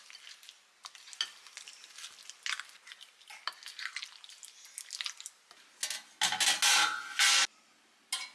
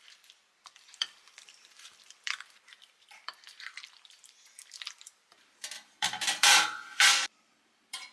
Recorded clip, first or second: first